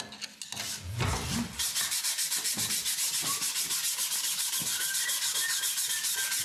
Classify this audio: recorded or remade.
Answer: recorded